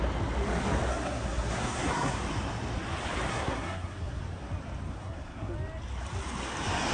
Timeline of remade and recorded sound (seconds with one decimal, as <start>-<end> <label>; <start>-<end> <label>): 0.0-0.9 recorded; 0.9-2.2 remade; 2.2-3.3 recorded; 3.3-4.2 remade; 4.2-4.9 recorded; 4.9-5.5 remade; 5.5-6.9 recorded